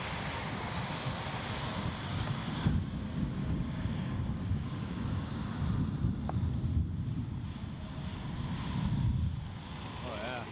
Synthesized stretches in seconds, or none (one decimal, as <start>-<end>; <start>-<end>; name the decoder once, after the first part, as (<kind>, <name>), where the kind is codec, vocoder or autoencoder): 0.4-0.9 (codec, DAC); 2.1-2.7; 3.4-5.5